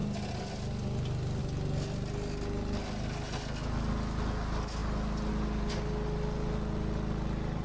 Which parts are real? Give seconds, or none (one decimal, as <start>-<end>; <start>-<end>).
0.0-7.6